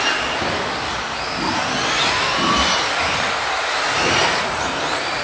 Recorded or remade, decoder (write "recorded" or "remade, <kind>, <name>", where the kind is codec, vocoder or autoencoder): recorded